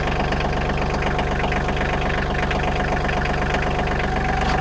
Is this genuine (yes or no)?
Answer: yes